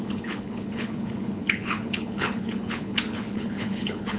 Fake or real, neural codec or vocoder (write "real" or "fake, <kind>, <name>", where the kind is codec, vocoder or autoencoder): fake, codec, HILCodec